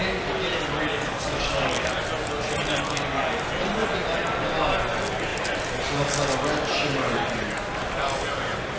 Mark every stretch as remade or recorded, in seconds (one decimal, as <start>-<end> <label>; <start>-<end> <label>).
0.0-0.9 recorded; 0.9-1.9 remade; 1.9-8.8 recorded